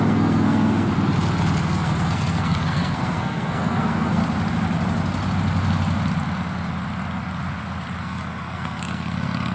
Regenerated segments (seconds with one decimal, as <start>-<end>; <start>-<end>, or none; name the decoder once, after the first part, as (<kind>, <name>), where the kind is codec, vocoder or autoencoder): 0.0-0.9 (codec, SNAC); 1.6-4.2; 8.0-9.5

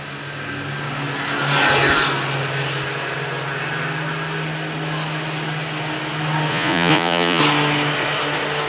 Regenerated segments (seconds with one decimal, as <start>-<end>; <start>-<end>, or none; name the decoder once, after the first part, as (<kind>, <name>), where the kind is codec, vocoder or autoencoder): 6.5-7.4 (vocoder, Vocos)

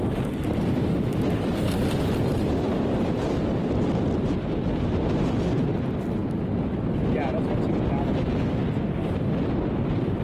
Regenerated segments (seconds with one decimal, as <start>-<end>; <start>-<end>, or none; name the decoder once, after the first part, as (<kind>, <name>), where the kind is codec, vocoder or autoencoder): none

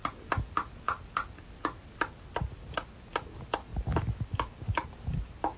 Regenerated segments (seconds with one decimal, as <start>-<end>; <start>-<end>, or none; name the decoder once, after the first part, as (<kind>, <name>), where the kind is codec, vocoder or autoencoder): none

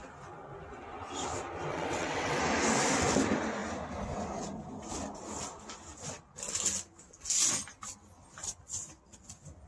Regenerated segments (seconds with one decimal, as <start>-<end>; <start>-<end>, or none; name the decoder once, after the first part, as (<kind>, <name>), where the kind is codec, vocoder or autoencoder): 1.7-2.4 (vocoder, WaveNeXt)

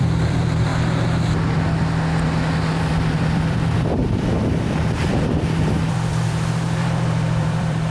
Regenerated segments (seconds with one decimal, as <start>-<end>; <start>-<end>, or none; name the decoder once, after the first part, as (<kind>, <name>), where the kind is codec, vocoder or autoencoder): 0.0-0.7 (vocoder, BigVGAN v2); 2.7-4.0; 5.9-7.9